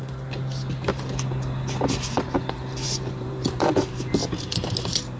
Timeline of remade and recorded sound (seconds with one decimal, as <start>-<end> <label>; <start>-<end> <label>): 0.0-2.7 recorded; 2.7-3.8 remade; 3.8-5.2 recorded